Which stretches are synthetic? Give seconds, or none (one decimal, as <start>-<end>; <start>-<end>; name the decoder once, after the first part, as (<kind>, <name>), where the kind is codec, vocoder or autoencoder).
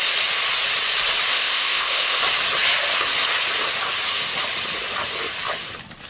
1.3-2.2 (codec, ZipCodec)